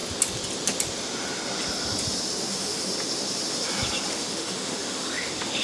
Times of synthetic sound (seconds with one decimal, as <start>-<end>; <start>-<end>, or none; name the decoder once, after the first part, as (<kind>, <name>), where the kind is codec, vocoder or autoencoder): 2.5-2.9 (autoencoder, DAC-VAE); 4.1-5.6

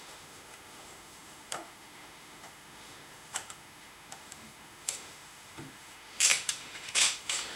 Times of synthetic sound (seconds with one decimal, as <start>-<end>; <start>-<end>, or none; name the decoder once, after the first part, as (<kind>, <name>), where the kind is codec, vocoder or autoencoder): 0.0-7.6 (autoencoder, DAC-VAE)

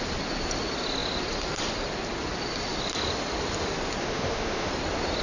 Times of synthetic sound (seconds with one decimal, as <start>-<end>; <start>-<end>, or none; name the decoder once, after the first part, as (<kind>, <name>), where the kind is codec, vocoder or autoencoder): 4.0-4.7 (autoencoder, DAC-VAE)

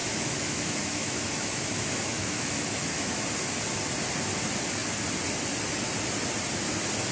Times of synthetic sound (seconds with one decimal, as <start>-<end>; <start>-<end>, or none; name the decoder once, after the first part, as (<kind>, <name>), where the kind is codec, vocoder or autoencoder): 0.0-3.2 (autoencoder, DAC-VAE)

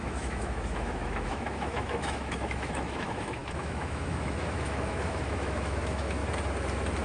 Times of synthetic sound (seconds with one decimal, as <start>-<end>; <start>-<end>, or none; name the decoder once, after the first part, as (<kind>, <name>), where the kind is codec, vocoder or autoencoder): 0.0-6.2 (autoencoder, DAC-VAE)

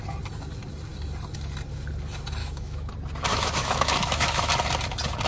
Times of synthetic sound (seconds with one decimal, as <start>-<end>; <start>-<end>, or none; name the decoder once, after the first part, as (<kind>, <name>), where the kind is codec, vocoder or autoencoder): 2.4-2.9 (autoencoder, DAC-VAE); 3.3-4.5